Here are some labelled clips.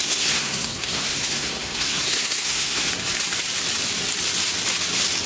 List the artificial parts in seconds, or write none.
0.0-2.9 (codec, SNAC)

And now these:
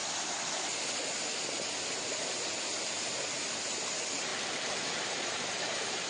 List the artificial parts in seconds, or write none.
3.3-4.3 (vocoder, BigVGAN v2); 5.1-6.1

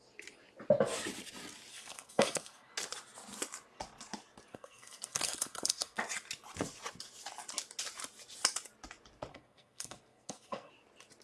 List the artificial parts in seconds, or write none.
1.7-2.7 (codec, SNAC); 4.5-6.0; 9.3-10.7

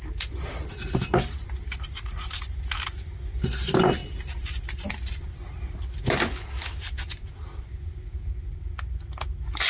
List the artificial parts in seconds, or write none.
none

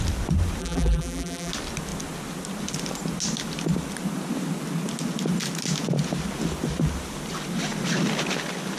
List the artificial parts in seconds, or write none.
0.6-1.5 (vocoder, BigVGAN v2)